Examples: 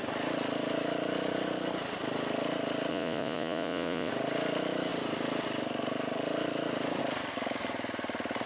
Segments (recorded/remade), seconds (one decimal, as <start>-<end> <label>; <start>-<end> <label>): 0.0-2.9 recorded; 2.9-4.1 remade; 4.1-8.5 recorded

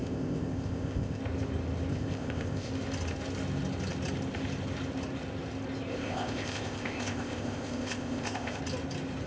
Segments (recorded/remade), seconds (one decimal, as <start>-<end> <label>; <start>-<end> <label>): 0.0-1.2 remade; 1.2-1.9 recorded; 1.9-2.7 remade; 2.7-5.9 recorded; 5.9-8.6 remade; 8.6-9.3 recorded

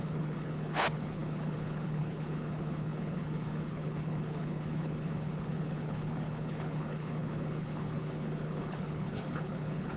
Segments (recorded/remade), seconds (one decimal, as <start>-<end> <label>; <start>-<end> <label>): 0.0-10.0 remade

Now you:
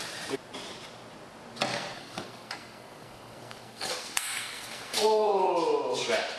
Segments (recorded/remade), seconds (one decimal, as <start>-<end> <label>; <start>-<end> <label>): 0.0-1.7 recorded; 1.7-5.5 remade; 5.5-6.4 recorded

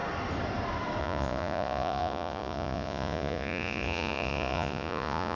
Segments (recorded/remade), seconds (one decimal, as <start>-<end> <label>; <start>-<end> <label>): 0.0-1.0 recorded; 1.0-5.3 remade